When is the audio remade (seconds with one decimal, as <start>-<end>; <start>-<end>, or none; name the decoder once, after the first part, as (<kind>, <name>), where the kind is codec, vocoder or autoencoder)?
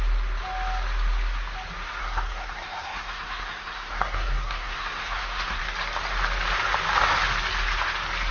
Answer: 2.0-5.6 (codec, SNAC)